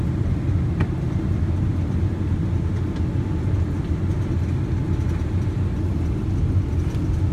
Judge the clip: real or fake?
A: real